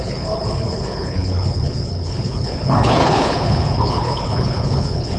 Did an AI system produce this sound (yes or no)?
yes